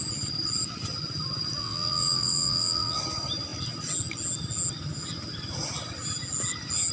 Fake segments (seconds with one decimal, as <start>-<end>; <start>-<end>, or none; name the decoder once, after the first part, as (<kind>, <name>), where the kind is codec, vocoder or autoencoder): 1.6-3.0 (vocoder, WaveNeXt)